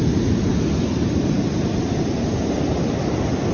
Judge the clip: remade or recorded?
recorded